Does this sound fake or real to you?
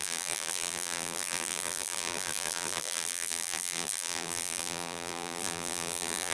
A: fake